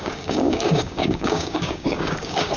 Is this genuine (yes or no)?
no